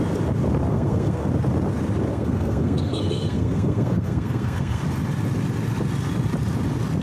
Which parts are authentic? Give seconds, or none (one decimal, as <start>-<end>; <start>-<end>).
0.0-0.7; 1.3-2.1; 4.8-7.0